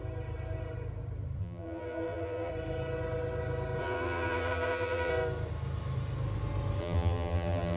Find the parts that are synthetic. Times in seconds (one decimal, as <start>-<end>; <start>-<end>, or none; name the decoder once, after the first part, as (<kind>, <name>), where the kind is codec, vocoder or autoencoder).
1.4-2.5 (vocoder, BigVGAN v2); 3.8-5.1; 6.8-7.8